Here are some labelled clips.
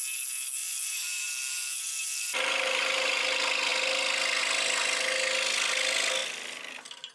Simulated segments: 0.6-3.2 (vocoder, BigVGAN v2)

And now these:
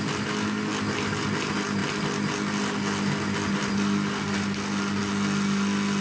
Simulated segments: none